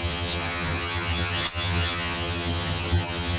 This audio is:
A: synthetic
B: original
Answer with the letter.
A